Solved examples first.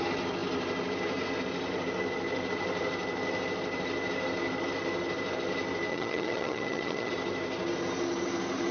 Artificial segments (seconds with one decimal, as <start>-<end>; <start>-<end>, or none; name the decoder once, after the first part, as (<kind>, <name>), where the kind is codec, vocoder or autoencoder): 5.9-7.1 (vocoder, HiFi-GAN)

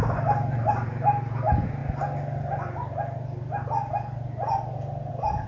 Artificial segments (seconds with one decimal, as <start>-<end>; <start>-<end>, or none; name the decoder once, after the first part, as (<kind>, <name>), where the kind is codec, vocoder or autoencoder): none

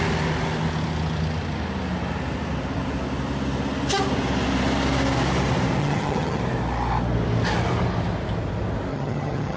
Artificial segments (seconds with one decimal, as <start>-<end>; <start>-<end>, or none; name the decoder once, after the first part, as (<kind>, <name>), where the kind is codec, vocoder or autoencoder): 5.8-6.4 (vocoder, HiFi-GAN); 8.9-9.6

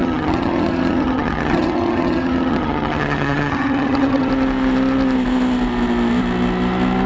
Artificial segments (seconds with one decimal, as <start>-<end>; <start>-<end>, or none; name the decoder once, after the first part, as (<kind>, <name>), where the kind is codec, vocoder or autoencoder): 0.0-4.3 (vocoder, HiFi-GAN)

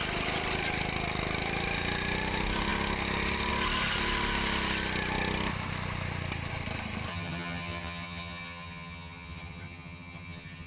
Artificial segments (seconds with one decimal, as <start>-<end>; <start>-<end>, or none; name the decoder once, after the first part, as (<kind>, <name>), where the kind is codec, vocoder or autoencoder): 7.1-10.7 (vocoder, HiFi-GAN)

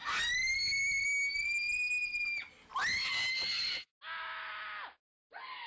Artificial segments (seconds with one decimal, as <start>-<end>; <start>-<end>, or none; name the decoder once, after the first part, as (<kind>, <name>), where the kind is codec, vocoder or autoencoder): none

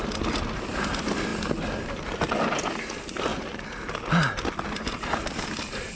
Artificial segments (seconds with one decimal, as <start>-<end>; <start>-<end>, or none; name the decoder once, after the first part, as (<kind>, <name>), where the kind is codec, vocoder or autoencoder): none

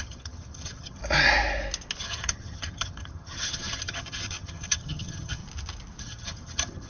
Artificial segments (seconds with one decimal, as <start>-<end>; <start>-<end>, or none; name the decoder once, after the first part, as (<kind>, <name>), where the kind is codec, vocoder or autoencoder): 0.0-1.0 (vocoder, HiFi-GAN); 2.0-5.4; 6.0-6.9